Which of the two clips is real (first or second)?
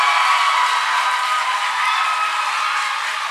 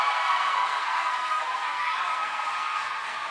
first